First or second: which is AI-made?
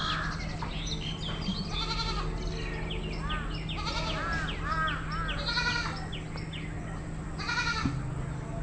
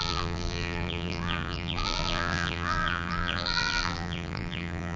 second